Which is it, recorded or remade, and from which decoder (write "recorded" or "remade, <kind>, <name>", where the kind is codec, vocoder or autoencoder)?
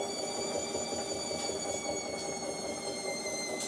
recorded